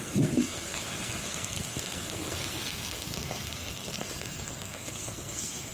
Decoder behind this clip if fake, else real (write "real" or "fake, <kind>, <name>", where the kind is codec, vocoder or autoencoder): fake, codec, SNAC